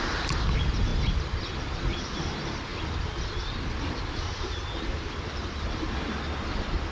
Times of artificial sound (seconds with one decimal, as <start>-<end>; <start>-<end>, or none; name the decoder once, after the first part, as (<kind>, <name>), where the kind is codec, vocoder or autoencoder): none